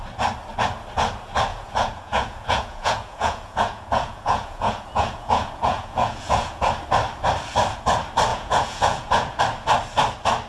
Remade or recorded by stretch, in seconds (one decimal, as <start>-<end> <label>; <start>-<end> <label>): 0.0-1.5 recorded; 1.5-6.7 remade; 6.7-8.3 recorded; 8.3-9.4 remade; 9.4-10.5 recorded